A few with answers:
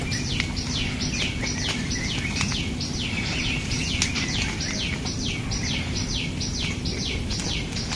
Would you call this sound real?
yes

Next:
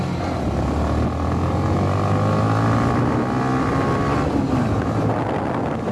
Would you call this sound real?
yes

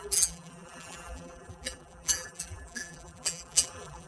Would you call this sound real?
no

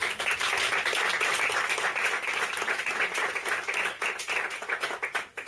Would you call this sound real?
yes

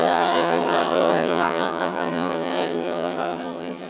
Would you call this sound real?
no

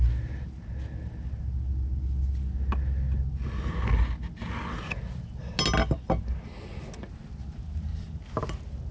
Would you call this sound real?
yes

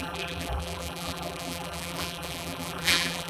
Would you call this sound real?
no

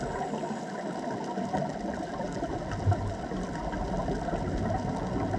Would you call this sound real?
yes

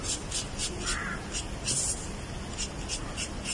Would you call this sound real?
yes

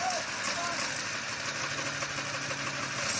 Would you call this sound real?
yes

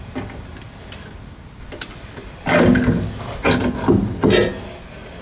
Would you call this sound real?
yes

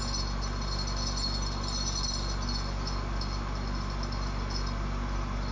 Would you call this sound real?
yes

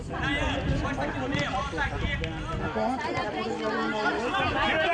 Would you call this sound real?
yes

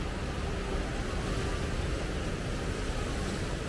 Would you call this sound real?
yes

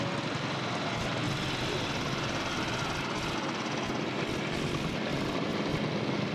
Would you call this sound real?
yes